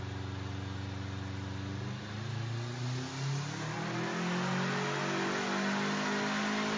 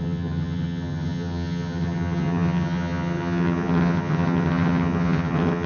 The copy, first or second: second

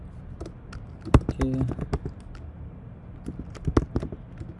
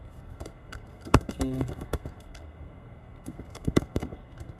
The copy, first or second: second